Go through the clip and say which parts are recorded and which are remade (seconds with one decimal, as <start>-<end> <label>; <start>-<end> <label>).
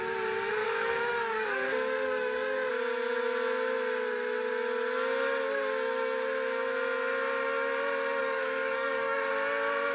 0.0-0.6 recorded; 0.6-2.7 remade; 2.7-8.2 recorded; 8.2-9.3 remade; 9.3-9.9 recorded